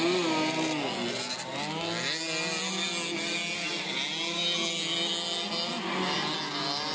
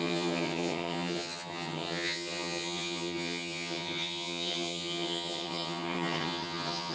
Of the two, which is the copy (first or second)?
second